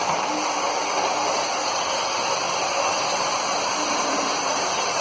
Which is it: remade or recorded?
recorded